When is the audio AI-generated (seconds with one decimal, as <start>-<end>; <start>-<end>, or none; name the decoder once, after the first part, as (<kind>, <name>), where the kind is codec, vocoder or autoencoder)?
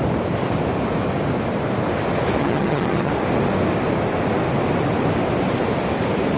2.4-3.1 (vocoder, HiFi-GAN)